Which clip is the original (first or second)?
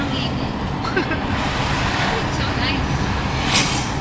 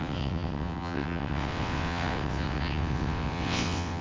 first